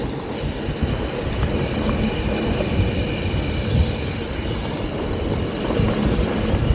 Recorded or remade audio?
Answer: recorded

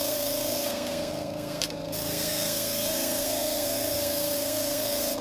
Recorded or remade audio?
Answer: remade